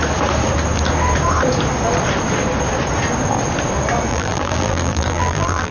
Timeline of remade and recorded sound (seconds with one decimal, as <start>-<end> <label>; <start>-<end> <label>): 0.0-4.1 recorded; 4.1-5.7 remade